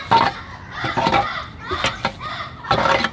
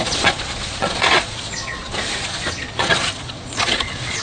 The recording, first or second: first